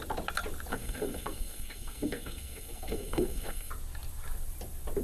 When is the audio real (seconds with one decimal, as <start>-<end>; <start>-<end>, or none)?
0.0-0.7; 3.7-5.0